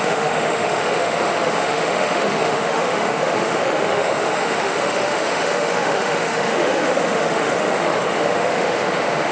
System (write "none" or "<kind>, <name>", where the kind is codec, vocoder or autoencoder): autoencoder, DAC-VAE